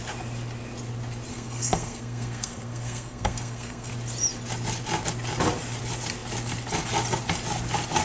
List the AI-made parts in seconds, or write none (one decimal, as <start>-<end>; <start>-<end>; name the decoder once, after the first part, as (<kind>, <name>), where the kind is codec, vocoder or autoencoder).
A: 1.3-3.9 (codec, SNAC)